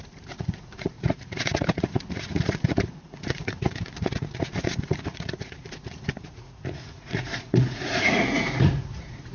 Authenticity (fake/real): fake